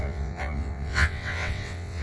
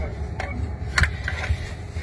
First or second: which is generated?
first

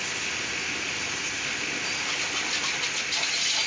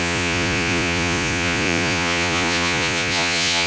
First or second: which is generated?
second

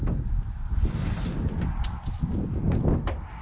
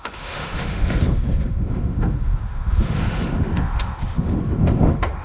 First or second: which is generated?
second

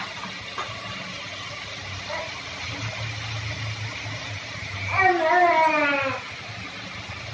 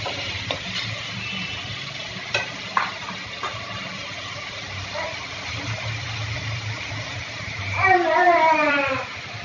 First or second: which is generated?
second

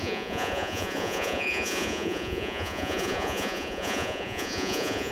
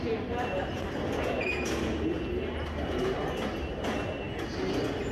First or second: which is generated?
first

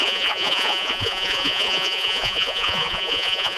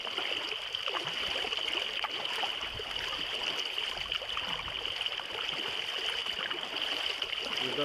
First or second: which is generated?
first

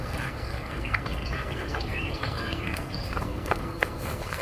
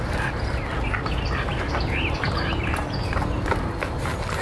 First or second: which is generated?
first